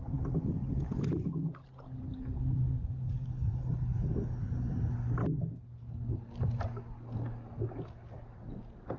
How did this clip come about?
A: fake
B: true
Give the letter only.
B